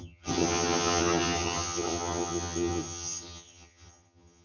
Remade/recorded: remade